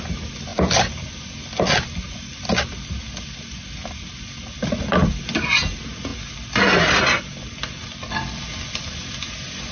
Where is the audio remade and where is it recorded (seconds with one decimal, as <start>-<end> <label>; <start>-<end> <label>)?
0.0-9.7 recorded

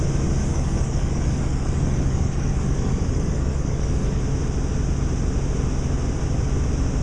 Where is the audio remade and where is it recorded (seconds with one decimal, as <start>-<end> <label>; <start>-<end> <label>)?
0.0-0.4 recorded; 0.4-4.2 remade; 4.2-7.0 recorded

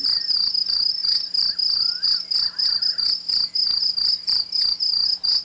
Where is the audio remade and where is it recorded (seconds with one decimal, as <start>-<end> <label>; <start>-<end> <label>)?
0.0-5.4 recorded